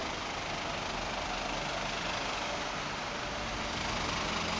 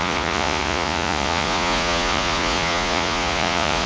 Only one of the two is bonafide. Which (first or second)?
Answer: first